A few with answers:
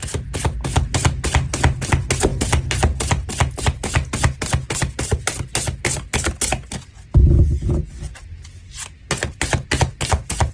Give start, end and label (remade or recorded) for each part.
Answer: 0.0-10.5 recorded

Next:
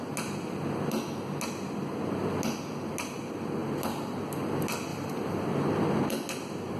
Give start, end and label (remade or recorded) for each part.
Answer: 0.0-4.9 recorded; 4.9-5.4 remade; 5.4-6.8 recorded

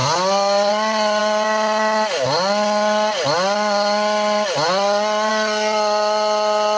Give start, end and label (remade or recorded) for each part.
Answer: 0.0-6.8 recorded

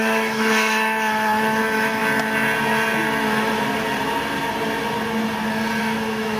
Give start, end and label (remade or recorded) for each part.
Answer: 0.0-2.0 remade; 2.0-5.8 recorded; 5.8-6.4 remade

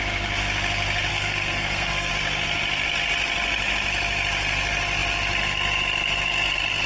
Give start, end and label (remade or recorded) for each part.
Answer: 0.0-1.1 recorded; 1.1-2.1 remade; 2.1-6.9 recorded

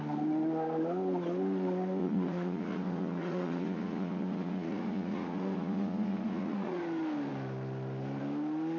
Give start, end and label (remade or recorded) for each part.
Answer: 0.0-2.0 recorded; 2.0-6.8 remade; 6.8-8.8 recorded

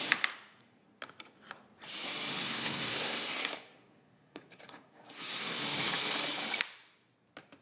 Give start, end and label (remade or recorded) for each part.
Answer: 0.0-2.4 recorded; 2.4-5.6 remade; 5.6-7.6 recorded

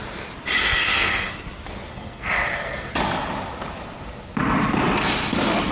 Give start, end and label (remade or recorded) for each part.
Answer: 0.0-0.6 recorded; 0.6-1.3 remade; 1.3-1.9 recorded; 1.9-2.9 remade; 2.9-5.7 recorded